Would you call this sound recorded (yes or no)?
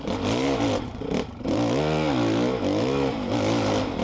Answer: yes